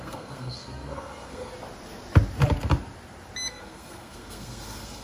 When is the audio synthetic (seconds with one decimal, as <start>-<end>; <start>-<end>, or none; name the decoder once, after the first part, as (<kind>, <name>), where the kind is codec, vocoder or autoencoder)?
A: 0.0-1.5 (codec, SNAC); 3.5-5.0